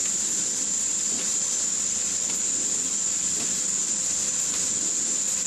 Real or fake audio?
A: real